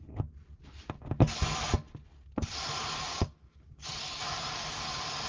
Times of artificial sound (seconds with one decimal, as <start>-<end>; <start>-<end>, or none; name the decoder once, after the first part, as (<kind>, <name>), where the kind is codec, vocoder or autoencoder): 3.1-3.7 (codec, DAC)